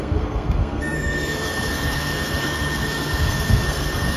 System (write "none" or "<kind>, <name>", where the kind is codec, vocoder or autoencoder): codec, SNAC